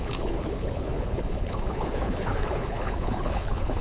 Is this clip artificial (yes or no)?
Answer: yes